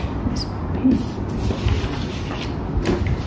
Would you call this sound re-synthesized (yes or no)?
no